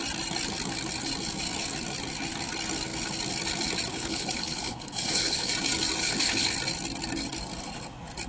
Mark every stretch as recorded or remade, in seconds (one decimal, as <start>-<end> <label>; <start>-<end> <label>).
0.0-3.9 recorded; 3.9-5.5 remade; 5.5-6.0 recorded; 6.0-6.5 remade; 6.5-8.3 recorded